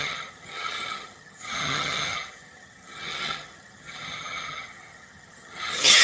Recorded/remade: remade